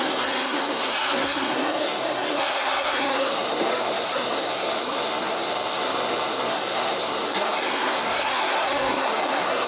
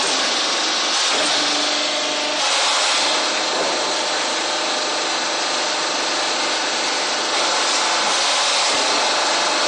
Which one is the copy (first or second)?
first